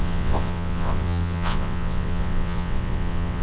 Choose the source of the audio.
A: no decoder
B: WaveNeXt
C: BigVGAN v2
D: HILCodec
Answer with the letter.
B